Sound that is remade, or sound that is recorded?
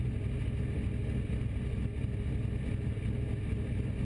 recorded